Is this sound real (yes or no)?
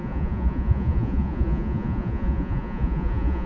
no